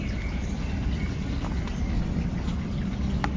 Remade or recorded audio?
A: recorded